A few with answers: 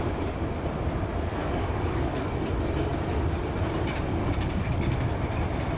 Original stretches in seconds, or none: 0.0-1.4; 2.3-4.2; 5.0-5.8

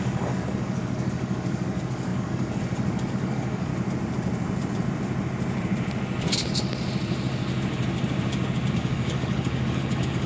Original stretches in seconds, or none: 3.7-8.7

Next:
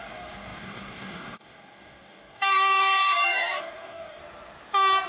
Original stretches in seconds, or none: 4.2-5.1

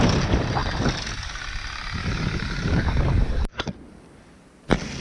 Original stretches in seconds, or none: 0.0-2.0; 3.7-5.0